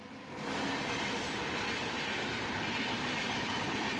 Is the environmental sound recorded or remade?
remade